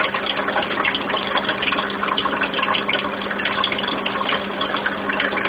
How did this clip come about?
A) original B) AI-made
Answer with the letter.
A